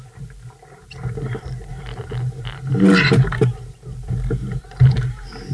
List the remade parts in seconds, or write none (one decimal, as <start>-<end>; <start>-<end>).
0.0-5.5